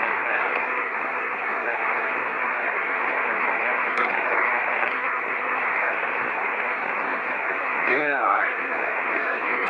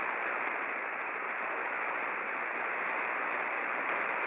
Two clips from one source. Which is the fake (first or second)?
first